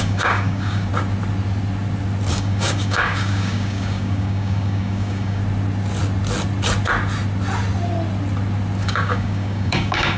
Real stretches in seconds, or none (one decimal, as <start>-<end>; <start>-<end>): 0.9-2.3; 5.4-8.8